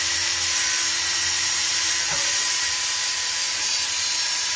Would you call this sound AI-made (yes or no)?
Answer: yes